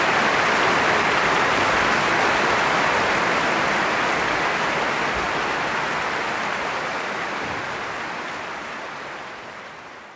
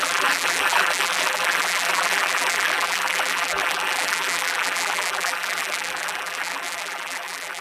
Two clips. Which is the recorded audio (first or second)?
first